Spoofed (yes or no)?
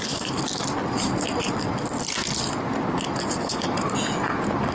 no